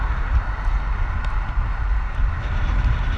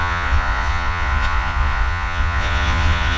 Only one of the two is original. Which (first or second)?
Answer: first